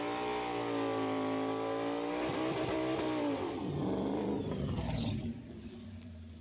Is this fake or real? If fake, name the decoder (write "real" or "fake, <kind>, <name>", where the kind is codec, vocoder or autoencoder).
fake, vocoder, BigVGAN v2